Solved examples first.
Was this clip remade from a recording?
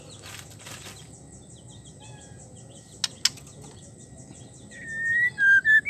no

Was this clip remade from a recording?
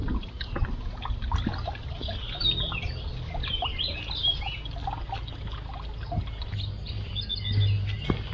no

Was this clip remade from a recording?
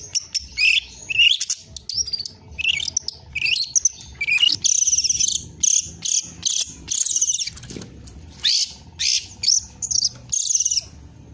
no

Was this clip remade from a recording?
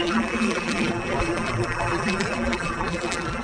yes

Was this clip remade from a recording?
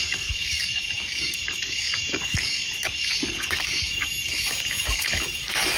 yes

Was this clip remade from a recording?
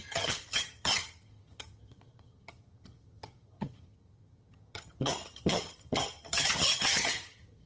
yes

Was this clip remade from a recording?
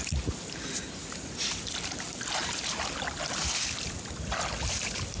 no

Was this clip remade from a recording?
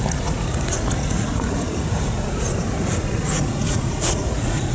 yes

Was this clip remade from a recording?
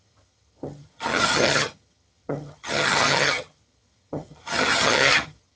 yes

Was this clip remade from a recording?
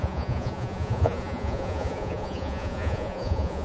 yes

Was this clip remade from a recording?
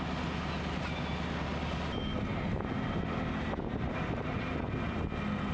no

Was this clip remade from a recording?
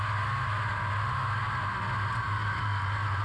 no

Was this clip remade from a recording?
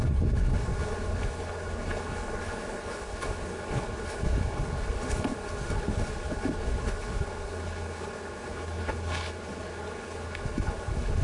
yes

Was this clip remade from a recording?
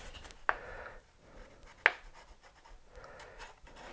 no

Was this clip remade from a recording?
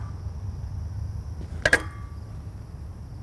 no